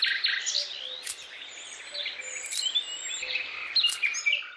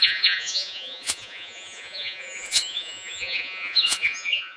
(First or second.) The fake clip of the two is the second